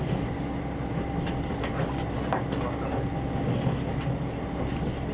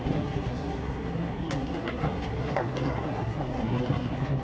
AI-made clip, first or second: second